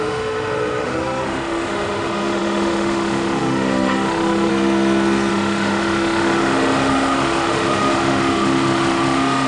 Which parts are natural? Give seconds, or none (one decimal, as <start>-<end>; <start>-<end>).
4.5-5.3